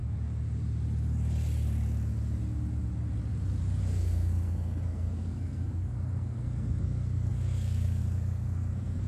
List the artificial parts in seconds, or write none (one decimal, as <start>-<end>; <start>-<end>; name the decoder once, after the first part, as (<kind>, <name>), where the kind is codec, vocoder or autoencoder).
3.8-9.1 (codec, SNAC)

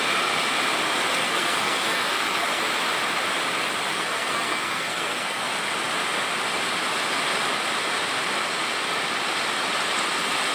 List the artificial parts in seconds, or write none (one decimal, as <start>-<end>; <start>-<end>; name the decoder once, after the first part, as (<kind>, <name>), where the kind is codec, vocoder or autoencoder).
1.2-2.6 (codec, SNAC); 3.9-5.5

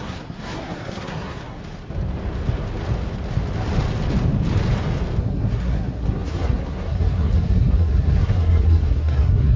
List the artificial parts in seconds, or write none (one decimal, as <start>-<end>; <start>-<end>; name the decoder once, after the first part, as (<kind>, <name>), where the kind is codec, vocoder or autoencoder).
0.0-1.6 (codec, SNAC); 5.2-9.6

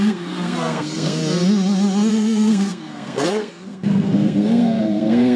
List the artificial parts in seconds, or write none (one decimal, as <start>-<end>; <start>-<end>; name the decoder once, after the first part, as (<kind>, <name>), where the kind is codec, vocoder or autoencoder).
0.0-1.2 (codec, SNAC); 2.1-5.4

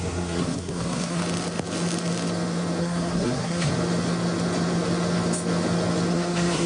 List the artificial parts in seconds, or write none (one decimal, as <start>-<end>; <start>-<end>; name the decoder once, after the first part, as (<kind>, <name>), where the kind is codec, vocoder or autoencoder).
0.0-1.2 (codec, SNAC); 2.8-3.7; 6.1-6.7

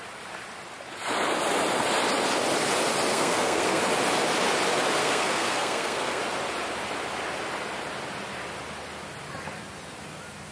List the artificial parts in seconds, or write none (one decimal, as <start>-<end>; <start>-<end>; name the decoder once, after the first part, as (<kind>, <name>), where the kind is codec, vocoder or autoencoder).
3.1-3.8 (codec, SNAC); 5.0-6.2

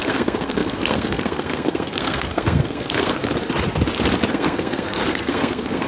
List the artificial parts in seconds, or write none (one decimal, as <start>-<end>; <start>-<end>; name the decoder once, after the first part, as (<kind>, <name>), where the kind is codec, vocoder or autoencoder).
0.0-3.2 (codec, SNAC); 4.3-5.9

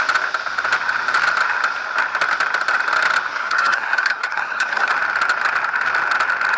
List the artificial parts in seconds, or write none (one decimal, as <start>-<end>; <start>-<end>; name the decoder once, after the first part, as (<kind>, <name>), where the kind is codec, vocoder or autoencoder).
3.3-4.9 (codec, SNAC)